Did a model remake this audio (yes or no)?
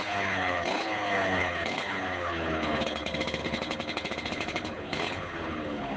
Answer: yes